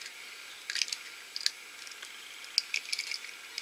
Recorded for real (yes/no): yes